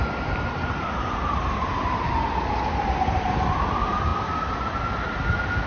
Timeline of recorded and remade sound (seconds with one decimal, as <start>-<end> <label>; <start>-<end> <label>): 0.0-5.7 recorded